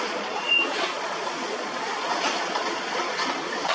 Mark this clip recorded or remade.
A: remade